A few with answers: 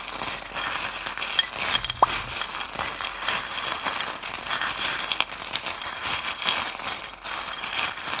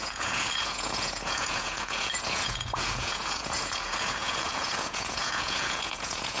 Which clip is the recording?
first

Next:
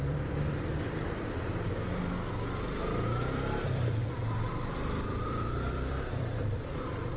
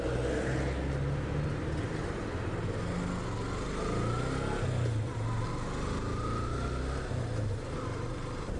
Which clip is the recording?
second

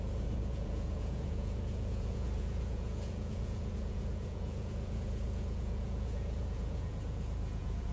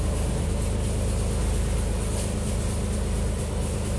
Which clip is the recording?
second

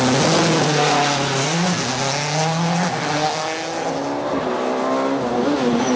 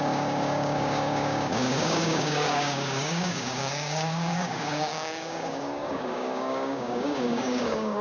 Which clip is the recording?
first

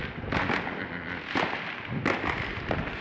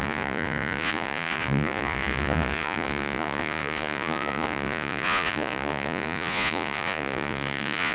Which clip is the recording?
first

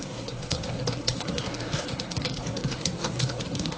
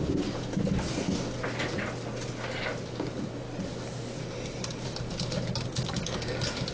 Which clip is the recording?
second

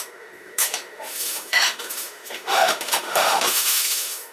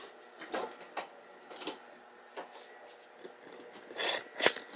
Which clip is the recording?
second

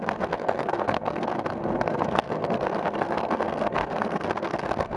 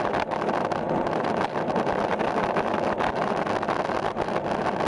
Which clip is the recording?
second